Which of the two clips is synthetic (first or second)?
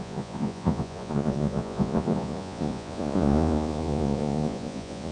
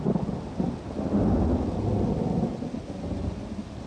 first